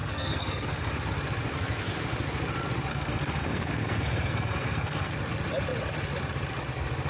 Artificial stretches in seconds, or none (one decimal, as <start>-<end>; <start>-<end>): 0.0-0.8; 2.9-5.1